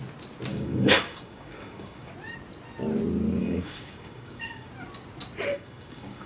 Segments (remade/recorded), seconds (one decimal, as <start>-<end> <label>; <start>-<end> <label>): 0.0-0.5 recorded; 0.5-2.1 remade; 2.1-3.4 recorded; 3.4-4.7 remade; 4.7-5.5 recorded; 5.5-6.3 remade